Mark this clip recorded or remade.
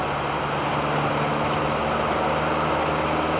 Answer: recorded